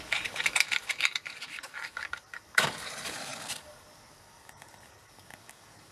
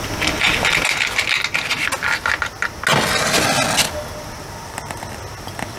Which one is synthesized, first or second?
first